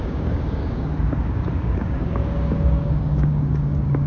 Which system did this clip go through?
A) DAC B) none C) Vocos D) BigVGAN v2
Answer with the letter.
A